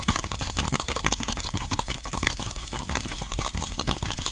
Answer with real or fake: fake